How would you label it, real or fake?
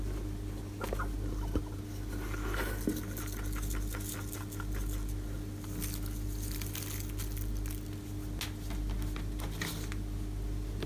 real